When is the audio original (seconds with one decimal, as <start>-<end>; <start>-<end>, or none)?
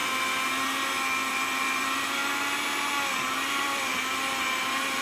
0.0-1.3; 2.2-3.5; 3.9-4.6